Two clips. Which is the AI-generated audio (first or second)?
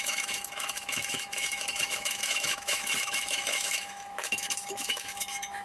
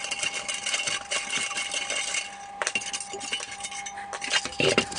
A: first